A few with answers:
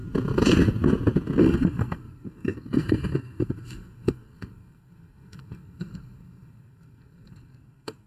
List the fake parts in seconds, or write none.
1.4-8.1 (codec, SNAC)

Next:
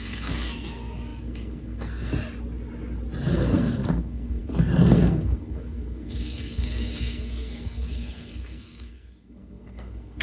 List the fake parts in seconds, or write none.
0.0-2.1 (codec, SNAC); 3.3-10.2

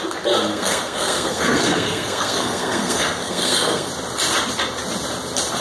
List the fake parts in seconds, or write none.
0.5-3.9 (codec, SNAC)

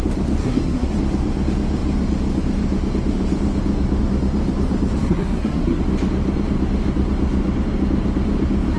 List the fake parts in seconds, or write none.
0.4-1.0 (codec, SNAC); 5.0-5.8

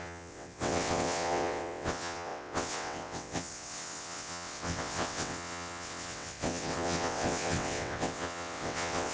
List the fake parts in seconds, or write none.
0.0-9.1 (vocoder, WaveNeXt)

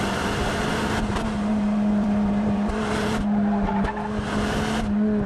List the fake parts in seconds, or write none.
1.5-3.7 (vocoder, BigVGAN v2)

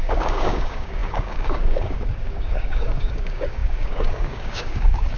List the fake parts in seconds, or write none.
0.0-5.2 (codec, DAC)